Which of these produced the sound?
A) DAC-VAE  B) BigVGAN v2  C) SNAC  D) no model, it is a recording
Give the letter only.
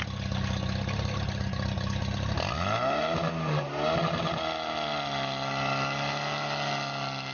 D